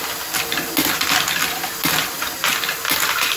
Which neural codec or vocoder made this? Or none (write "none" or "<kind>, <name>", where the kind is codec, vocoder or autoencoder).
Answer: none